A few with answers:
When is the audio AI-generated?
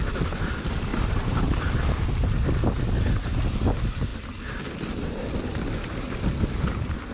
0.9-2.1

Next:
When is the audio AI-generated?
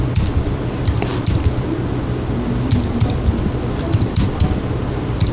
none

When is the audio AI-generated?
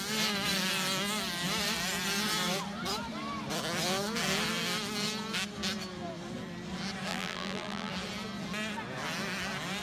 7.1-7.9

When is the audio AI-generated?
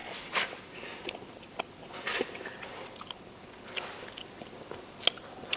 none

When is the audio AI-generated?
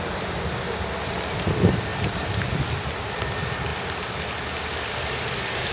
1.9-2.4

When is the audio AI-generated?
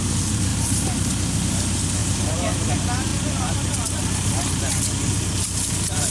0.5-1.1; 2.0-2.7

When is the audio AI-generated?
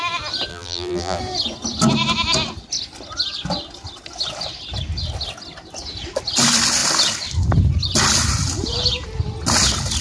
0.5-1.2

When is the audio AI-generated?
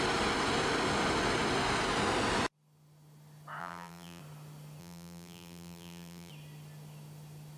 3.6-4.2; 4.8-6.3